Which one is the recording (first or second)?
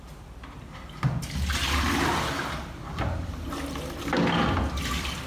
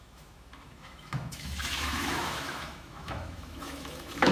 first